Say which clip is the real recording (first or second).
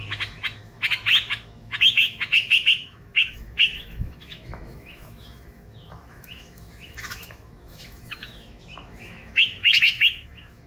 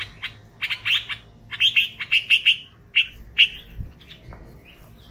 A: second